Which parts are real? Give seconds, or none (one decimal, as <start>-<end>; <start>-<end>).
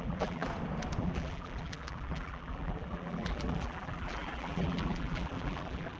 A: 0.5-1.0